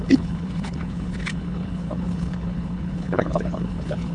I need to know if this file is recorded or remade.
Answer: remade